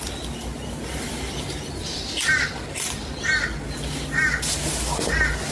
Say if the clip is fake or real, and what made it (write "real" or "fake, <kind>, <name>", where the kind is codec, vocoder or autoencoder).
real